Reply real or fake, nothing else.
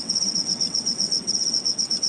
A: fake